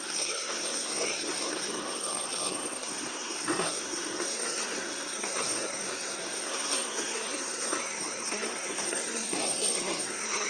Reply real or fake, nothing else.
fake